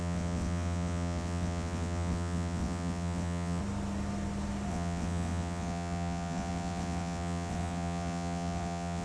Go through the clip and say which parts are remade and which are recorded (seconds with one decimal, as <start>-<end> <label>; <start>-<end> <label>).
0.0-3.6 remade; 3.6-4.7 recorded; 4.7-9.0 remade